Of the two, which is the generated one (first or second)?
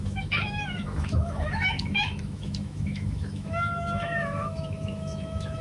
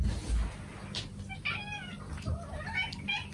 first